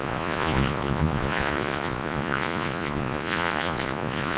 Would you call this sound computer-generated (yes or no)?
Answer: yes